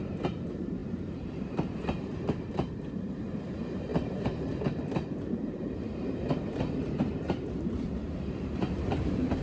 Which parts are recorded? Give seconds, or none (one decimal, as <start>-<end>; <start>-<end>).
none